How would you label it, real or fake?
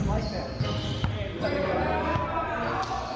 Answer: real